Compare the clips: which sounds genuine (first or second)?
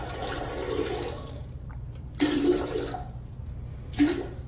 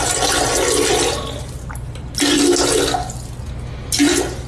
second